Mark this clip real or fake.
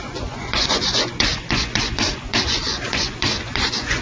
fake